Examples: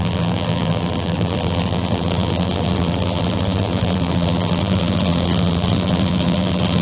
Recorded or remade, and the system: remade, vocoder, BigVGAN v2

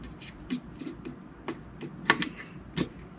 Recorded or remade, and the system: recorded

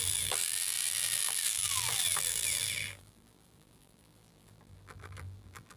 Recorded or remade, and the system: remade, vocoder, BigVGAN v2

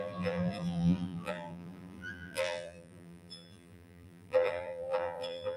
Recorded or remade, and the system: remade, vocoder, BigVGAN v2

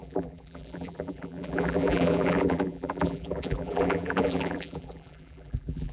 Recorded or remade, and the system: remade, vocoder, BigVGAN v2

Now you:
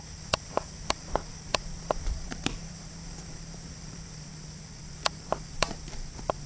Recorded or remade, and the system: remade, vocoder, BigVGAN v2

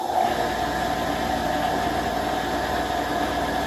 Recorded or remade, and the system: recorded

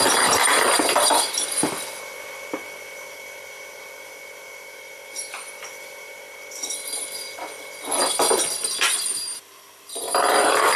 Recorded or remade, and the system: remade, vocoder, BigVGAN v2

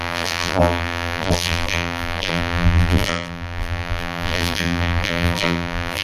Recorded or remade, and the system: remade, vocoder, BigVGAN v2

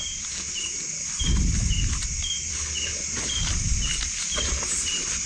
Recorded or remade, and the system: remade, vocoder, BigVGAN v2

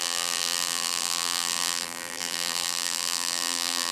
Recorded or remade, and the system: remade, vocoder, BigVGAN v2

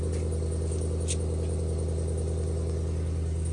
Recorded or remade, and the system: recorded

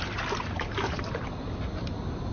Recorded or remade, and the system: remade, vocoder, BigVGAN v2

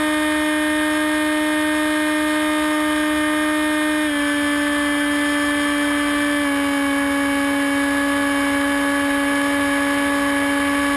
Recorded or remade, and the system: recorded